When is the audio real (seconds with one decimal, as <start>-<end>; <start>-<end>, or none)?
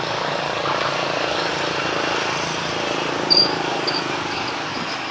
1.5-3.1